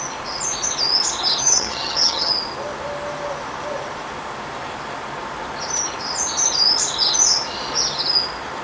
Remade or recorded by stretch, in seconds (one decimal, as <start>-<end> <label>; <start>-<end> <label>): 0.0-1.4 recorded; 1.4-2.3 remade; 2.3-8.6 recorded

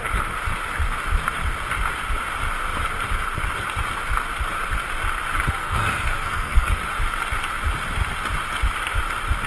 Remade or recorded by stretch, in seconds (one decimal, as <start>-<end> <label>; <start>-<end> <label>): 0.0-5.6 recorded; 5.6-6.8 remade; 6.8-9.5 recorded

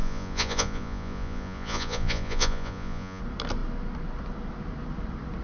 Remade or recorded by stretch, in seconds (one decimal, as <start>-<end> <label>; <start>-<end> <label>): 0.0-3.2 remade; 3.2-5.4 recorded

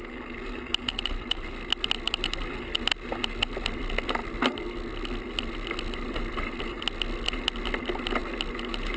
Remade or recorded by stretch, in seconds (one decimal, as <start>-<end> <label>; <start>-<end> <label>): 0.0-9.0 recorded

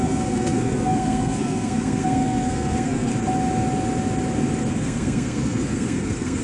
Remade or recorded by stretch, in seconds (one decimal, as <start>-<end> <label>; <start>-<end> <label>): 0.0-3.1 remade; 3.1-4.7 recorded; 4.7-6.4 remade

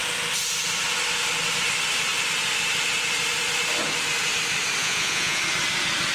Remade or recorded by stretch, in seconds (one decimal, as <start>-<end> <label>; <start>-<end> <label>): 0.0-4.8 recorded; 4.8-5.4 remade; 5.4-6.1 recorded

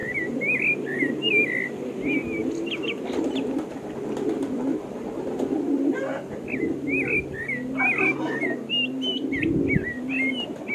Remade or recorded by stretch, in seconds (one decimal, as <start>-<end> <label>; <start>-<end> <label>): 0.0-10.7 recorded

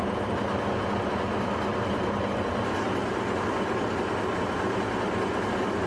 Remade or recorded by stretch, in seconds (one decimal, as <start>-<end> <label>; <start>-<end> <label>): 0.0-5.9 recorded